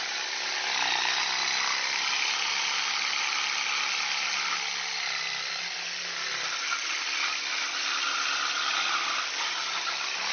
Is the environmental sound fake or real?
real